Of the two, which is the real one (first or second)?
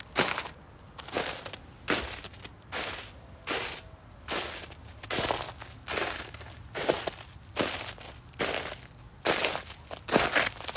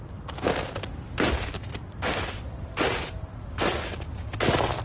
first